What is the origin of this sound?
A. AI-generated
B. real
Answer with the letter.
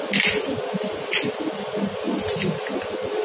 B